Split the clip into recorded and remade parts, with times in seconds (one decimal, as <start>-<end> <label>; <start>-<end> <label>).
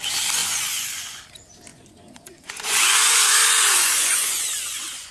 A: 0.0-0.4 recorded; 0.4-1.2 remade; 1.2-1.7 recorded; 1.7-5.1 remade